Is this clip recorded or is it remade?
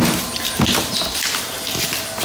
recorded